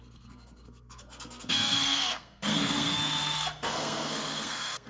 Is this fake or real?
fake